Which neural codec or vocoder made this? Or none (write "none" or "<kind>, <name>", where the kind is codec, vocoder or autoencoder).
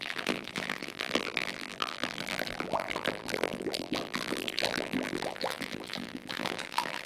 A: vocoder, BigVGAN v2